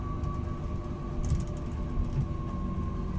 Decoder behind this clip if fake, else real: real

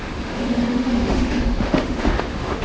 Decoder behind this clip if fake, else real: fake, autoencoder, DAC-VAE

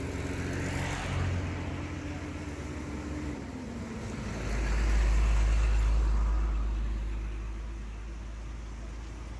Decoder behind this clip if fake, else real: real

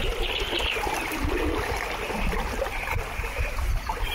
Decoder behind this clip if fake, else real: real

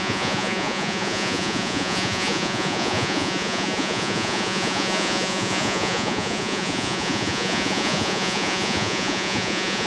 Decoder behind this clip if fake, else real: fake, vocoder, Vocos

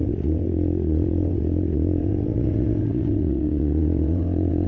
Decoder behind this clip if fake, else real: fake, vocoder, WaveNeXt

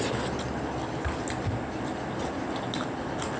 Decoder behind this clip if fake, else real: real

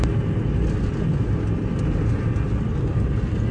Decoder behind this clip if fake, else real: real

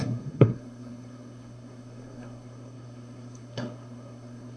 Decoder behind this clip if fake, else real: fake, codec, SNAC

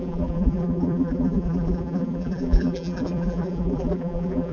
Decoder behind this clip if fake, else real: fake, vocoder, BigVGAN v2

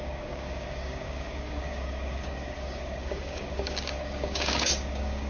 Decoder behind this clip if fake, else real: fake, codec, DAC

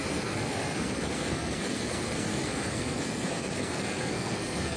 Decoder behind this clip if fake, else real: fake, codec, SNAC